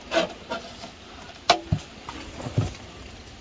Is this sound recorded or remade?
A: remade